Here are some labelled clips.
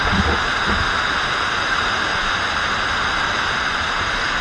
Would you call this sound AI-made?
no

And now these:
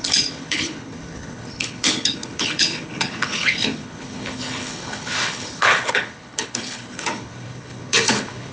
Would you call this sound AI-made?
yes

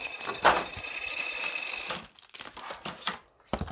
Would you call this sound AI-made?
no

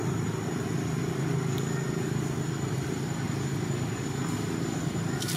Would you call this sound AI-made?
no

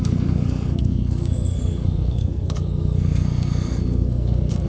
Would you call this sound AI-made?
yes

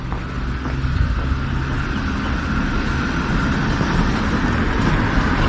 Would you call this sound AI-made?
no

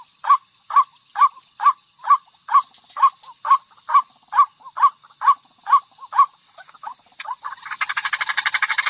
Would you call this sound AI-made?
no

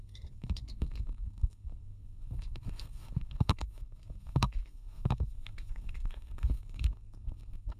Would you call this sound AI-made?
yes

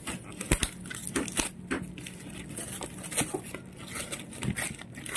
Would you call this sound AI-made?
no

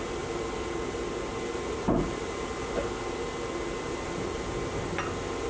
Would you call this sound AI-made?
no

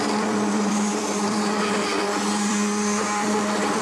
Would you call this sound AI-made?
yes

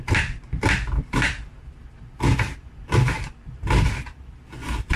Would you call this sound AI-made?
yes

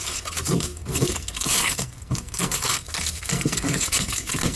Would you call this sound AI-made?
yes